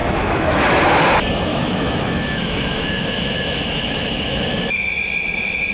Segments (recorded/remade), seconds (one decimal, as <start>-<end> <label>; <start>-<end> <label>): 0.0-0.8 remade; 0.8-1.5 recorded; 1.5-4.9 remade; 4.9-5.7 recorded